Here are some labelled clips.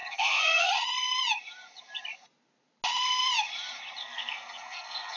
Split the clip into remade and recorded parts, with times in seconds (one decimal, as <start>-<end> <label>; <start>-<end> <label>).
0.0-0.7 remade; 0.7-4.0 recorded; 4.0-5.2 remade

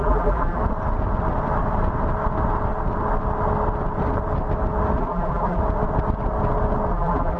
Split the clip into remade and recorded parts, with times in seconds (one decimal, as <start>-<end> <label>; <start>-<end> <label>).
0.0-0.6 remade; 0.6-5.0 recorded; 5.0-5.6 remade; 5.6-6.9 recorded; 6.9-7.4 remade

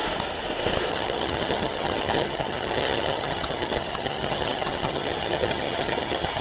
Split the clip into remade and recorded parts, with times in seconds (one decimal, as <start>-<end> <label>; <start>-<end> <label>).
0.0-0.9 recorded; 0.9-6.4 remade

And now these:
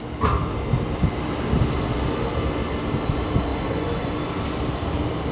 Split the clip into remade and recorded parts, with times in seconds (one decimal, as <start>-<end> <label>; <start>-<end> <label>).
0.0-3.5 recorded; 3.5-4.1 remade; 4.1-5.3 recorded

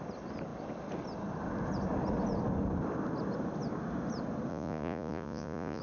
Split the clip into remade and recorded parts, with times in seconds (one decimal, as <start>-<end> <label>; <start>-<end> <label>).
0.0-4.5 recorded; 4.5-5.8 remade